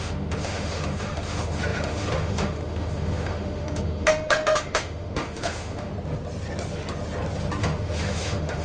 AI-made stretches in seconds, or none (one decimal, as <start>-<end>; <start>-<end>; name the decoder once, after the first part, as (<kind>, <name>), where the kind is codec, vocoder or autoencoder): 0.0-5.9 (autoencoder, DAC-VAE); 7.6-8.6